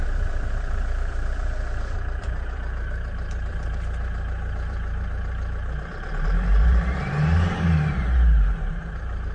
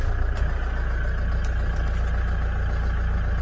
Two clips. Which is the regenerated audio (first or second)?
first